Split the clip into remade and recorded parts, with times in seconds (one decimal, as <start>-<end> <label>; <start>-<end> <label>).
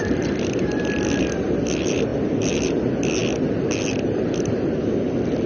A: 0.0-5.5 recorded